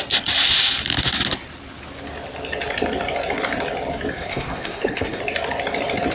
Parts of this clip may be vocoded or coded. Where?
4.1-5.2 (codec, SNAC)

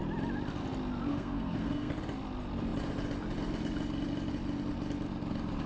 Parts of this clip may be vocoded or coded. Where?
1.1-1.9 (codec, SNAC)